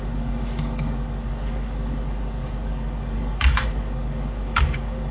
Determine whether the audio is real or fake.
fake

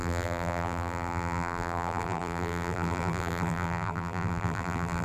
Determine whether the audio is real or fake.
fake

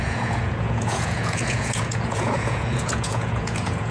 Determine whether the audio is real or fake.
fake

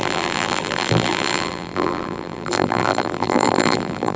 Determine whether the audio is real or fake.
fake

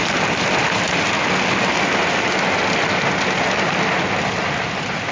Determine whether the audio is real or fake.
real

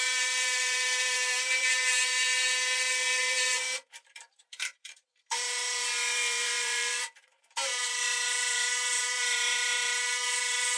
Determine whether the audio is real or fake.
fake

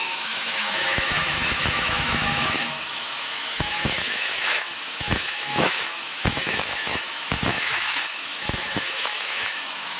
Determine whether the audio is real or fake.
fake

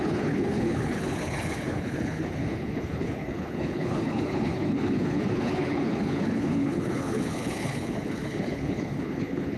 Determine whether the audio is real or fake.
fake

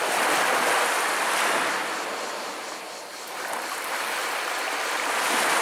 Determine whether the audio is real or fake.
real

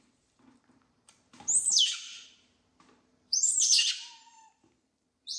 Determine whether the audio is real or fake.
fake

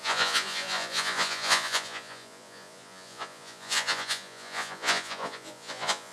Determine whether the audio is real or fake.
fake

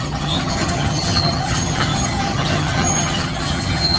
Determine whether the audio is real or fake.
fake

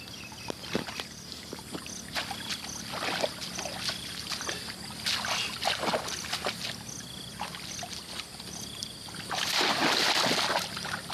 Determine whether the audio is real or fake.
real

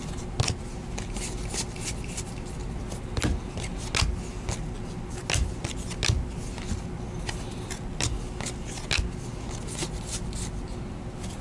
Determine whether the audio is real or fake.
real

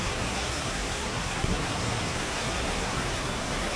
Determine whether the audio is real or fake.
fake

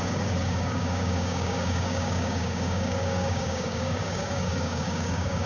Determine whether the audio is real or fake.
fake